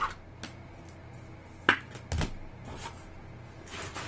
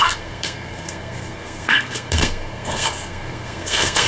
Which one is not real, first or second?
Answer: second